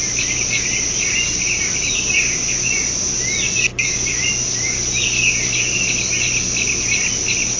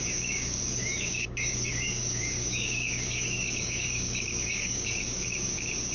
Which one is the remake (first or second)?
second